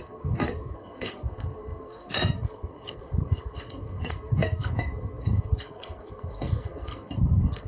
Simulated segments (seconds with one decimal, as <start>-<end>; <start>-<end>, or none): 0.0-7.7